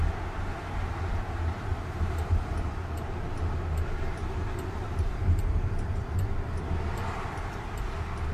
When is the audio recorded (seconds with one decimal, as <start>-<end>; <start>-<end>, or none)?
0.0-1.7; 2.4-4.2; 6.3-8.3